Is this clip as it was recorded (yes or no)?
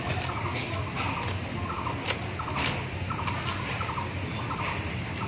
yes